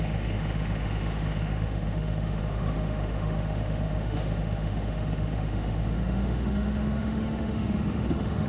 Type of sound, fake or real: fake